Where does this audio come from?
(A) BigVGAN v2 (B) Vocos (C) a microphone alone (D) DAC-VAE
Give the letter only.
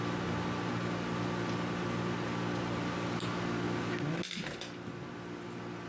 C